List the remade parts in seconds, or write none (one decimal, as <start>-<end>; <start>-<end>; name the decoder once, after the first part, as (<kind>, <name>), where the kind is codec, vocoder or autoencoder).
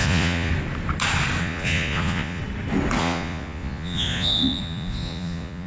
0.0-0.5 (vocoder, Vocos); 1.4-2.4; 3.0-5.7